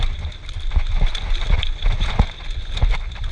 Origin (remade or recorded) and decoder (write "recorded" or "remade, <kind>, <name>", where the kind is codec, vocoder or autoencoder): recorded